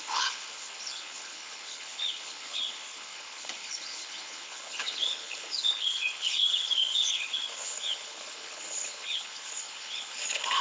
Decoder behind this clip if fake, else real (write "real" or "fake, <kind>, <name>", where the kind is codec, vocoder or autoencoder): fake, codec, HILCodec